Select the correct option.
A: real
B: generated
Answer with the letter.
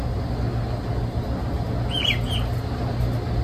A